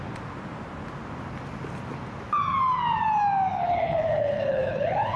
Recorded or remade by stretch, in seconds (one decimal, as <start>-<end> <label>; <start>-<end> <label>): 0.0-3.5 recorded; 3.5-5.2 remade